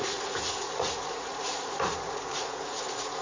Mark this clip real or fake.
fake